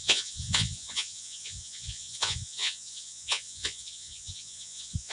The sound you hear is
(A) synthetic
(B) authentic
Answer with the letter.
A